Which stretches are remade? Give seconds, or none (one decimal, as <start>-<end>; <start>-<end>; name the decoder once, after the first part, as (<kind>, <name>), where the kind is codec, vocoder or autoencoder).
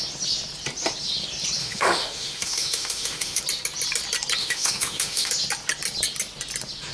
1.6-3.4 (autoencoder, DAC-VAE); 4.4-5.3